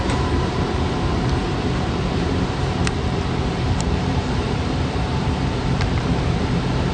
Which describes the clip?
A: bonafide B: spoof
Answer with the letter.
B